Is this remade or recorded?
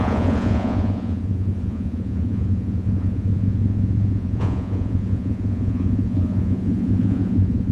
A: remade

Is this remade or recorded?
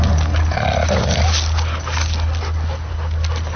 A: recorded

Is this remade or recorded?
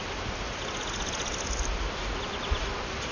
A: recorded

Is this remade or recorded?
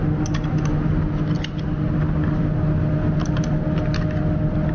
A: recorded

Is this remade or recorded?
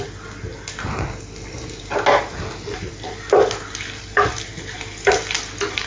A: recorded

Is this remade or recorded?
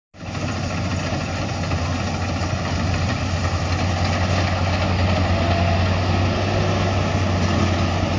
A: recorded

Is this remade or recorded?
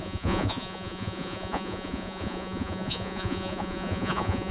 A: remade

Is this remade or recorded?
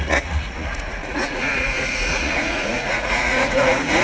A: remade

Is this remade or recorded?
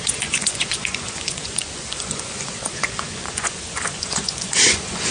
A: remade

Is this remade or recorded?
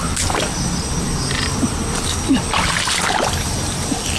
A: recorded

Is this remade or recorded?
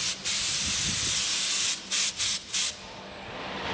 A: recorded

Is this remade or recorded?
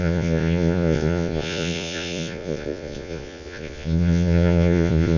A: remade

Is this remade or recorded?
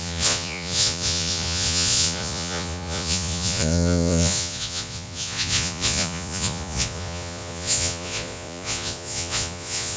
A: remade